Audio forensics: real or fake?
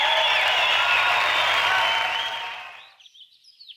real